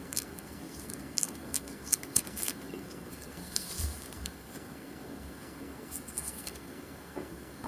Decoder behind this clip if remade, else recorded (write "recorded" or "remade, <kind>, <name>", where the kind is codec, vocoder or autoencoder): remade, codec, SNAC